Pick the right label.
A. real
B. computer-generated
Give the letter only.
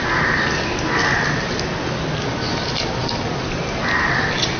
A